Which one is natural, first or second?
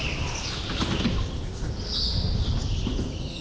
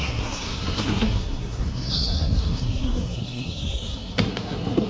first